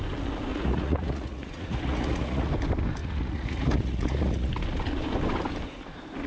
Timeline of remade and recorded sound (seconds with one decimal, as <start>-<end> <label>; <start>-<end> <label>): 0.0-0.5 recorded; 0.5-2.5 remade; 2.5-3.0 recorded; 3.0-4.5 remade; 4.5-6.3 recorded